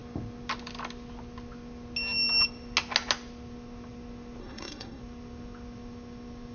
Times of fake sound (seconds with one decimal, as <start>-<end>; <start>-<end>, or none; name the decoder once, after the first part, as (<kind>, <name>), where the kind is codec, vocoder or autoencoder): 4.4-5.0 (codec, SNAC)